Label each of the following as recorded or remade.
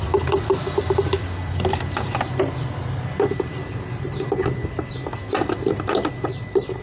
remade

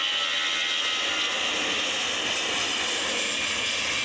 recorded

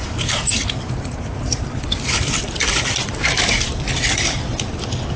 remade